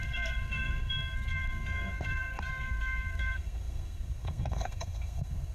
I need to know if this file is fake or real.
fake